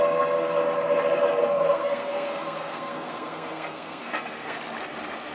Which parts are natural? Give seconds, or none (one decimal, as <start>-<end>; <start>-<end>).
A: 0.0-1.4; 4.6-5.3